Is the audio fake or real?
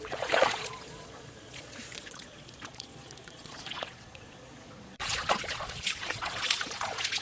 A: fake